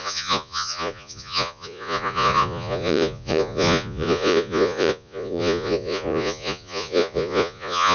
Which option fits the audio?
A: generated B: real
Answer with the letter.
A